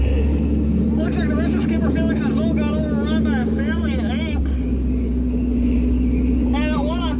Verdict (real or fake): real